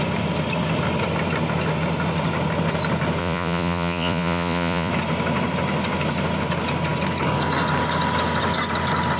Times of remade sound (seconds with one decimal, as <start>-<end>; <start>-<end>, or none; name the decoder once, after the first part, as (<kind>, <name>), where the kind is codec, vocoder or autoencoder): 3.2-4.9 (vocoder, Vocos)